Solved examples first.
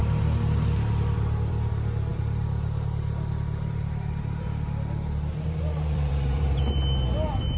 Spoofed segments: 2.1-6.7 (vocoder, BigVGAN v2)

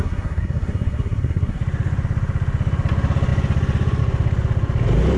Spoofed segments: 0.0-1.6 (codec, SNAC)

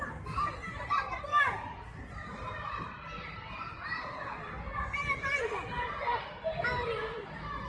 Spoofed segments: none

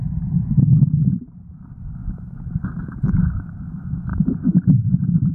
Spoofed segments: 1.0-1.6 (vocoder, BigVGAN v2); 4.1-5.3

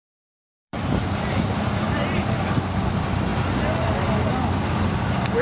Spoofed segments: 0.0-2.8 (vocoder, BigVGAN v2)

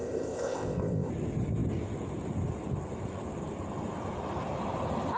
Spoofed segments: 0.0-1.1 (codec, ZipCodec)

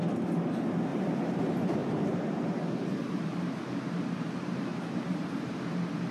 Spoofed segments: 0.9-1.4 (vocoder, BigVGAN v2); 1.8-5.5

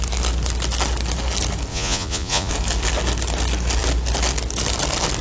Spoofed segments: 1.7-2.5 (vocoder, Vocos)